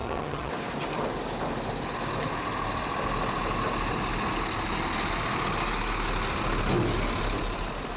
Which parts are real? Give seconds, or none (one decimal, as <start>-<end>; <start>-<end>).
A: 0.5-8.0